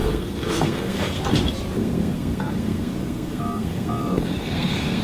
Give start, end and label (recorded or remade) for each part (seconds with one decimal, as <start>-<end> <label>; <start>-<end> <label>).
0.0-1.2 remade; 1.2-1.8 recorded; 1.8-5.0 remade